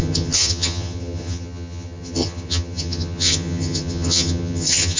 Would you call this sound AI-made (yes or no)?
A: yes